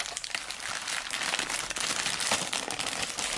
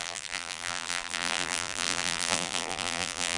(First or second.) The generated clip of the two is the second